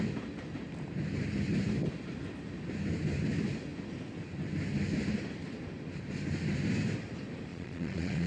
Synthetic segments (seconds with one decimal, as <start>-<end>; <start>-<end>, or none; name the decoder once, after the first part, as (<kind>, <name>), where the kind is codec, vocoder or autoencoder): 7.5-8.3 (vocoder, Vocos)